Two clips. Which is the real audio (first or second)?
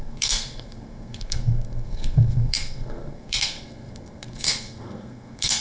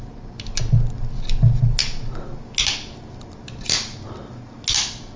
second